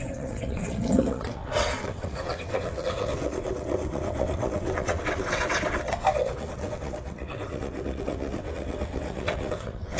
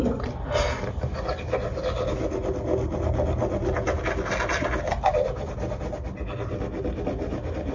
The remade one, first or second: first